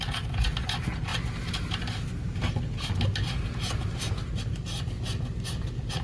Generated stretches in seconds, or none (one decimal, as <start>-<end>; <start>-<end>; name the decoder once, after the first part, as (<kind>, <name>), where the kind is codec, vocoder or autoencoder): none